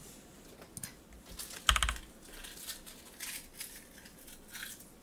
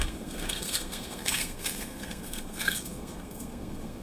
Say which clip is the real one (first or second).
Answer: first